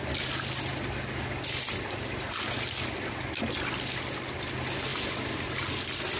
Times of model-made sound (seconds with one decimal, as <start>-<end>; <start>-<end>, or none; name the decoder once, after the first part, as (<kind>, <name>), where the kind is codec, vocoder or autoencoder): none

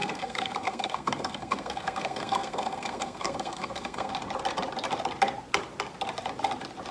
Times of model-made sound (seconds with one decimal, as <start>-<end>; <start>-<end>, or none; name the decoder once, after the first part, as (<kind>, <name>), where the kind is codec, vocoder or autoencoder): 0.0-4.1 (codec, SNAC)

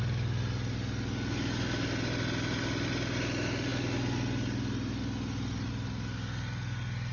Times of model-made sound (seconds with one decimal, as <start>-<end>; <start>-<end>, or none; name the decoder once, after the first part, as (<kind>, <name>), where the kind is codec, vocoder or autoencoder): none

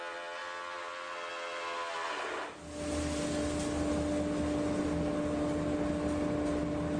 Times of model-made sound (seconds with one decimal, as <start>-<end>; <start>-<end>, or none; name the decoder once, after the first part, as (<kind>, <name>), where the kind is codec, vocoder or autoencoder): none

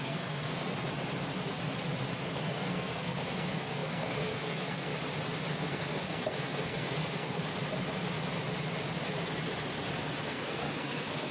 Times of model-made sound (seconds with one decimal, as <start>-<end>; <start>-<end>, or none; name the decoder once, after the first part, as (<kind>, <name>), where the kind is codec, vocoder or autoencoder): 0.0-0.5 (codec, SNAC); 2.2-4.9; 5.5-7.4; 10.2-11.3

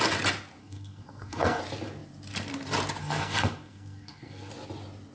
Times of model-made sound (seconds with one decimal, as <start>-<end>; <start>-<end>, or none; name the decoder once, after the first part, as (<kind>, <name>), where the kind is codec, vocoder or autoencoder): 0.6-1.6 (codec, SNAC); 3.0-4.5

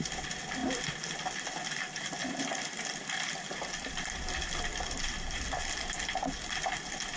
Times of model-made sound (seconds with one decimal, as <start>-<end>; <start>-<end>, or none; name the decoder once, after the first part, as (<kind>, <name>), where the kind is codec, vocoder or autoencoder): none